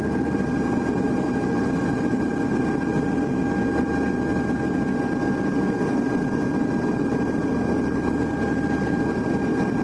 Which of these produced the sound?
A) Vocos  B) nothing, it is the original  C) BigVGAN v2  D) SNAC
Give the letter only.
B